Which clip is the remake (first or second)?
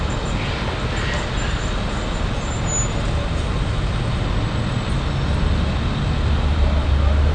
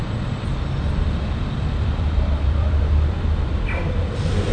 second